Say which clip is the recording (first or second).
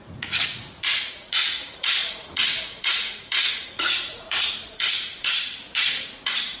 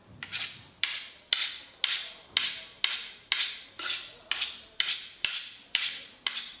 second